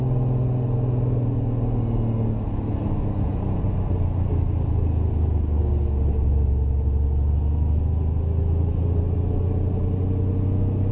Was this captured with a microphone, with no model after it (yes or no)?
yes